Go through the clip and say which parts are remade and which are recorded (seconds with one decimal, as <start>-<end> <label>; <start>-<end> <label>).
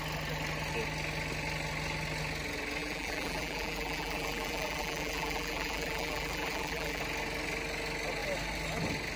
0.0-2.8 recorded; 2.8-7.0 remade; 7.0-9.2 recorded